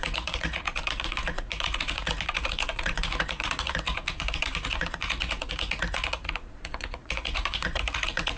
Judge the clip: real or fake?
fake